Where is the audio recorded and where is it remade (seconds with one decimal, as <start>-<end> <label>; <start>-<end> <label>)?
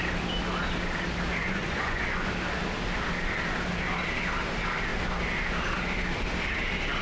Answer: 0.0-1.4 recorded; 1.4-2.3 remade; 2.3-7.0 recorded